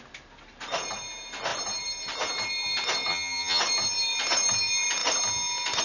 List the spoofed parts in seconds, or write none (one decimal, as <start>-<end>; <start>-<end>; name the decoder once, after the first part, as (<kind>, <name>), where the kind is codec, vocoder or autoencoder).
3.1-3.6 (vocoder, HiFi-GAN)